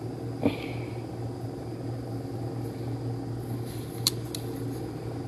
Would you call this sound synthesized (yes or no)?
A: no